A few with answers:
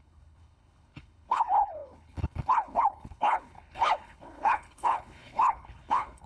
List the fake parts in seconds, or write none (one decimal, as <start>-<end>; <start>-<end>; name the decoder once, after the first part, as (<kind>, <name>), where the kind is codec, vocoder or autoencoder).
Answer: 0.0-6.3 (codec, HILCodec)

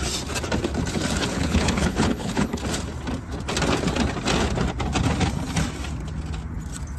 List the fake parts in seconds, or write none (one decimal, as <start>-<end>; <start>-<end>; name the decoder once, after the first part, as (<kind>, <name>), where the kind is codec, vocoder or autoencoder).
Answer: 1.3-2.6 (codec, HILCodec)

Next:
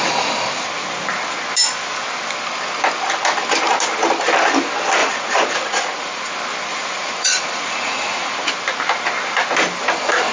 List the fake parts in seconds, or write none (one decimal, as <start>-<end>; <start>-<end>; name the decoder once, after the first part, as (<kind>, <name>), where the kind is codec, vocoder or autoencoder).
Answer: 5.0-6.3 (vocoder, Vocos); 6.7-8.5

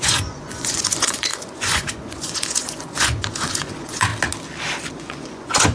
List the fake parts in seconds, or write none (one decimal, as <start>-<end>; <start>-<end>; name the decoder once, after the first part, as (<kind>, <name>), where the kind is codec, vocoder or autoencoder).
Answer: 0.0-4.1 (vocoder, Vocos); 4.9-5.7

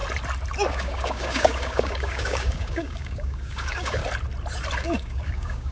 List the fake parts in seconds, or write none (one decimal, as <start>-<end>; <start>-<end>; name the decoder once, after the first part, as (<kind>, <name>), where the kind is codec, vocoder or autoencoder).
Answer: 0.7-4.0 (codec, DAC); 4.8-5.7

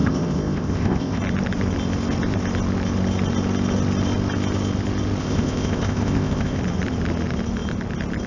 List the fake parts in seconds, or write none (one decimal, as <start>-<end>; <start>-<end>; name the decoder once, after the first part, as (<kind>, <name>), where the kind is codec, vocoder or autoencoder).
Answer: 0.0-1.2 (codec, ZipCodec); 5.2-6.6